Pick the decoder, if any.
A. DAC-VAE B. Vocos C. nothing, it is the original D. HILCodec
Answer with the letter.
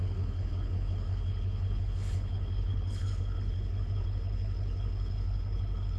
D